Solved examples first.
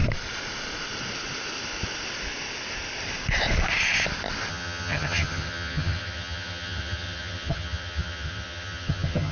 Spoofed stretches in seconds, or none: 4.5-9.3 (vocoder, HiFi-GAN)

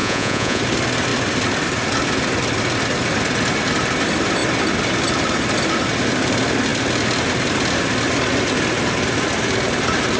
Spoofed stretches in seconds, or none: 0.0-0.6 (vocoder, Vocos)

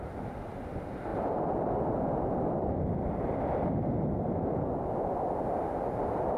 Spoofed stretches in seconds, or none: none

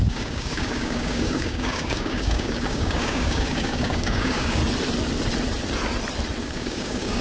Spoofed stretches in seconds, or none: 0.0-4.6 (codec, DAC); 6.4-7.2

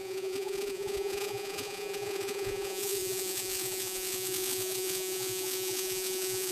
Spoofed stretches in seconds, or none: 0.0-6.5 (vocoder, Vocos)

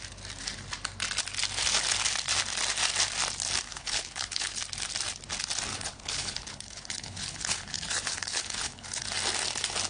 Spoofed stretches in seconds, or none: 3.7-4.6 (codec, HILCodec); 5.7-9.0

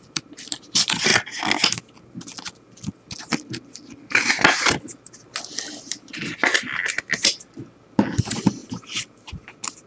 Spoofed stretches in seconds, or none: none